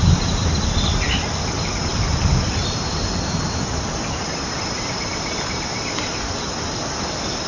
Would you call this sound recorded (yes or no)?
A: yes